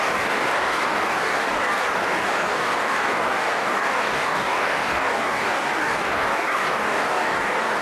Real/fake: fake